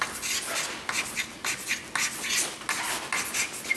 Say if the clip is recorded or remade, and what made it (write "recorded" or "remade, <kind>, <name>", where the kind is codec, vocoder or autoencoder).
recorded